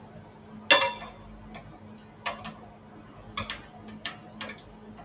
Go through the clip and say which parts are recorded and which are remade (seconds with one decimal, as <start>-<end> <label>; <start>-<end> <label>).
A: 0.0-5.0 recorded